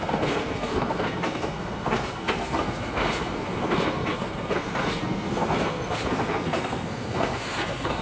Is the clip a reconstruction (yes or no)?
yes